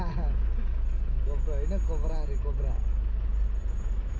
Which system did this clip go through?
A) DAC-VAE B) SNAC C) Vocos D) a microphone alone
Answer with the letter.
D